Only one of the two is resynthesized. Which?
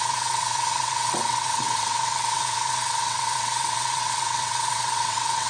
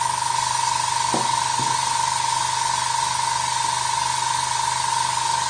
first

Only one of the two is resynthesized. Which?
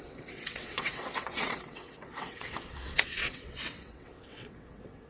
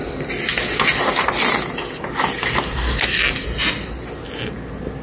first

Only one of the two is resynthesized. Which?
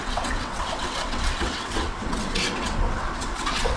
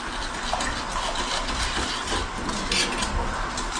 first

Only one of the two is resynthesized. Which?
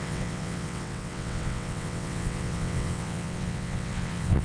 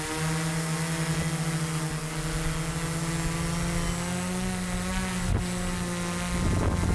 first